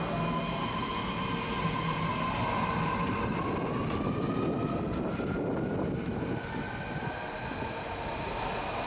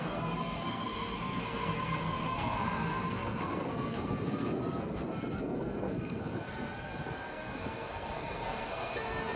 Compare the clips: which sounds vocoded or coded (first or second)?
second